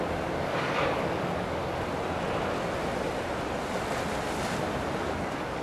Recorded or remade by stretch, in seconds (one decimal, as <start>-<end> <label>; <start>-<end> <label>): 0.0-1.6 remade; 1.6-5.0 recorded; 5.0-5.6 remade